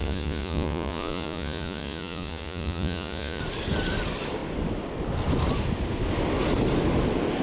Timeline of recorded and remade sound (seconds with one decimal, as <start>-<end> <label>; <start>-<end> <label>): 0.0-3.4 remade; 3.4-7.4 recorded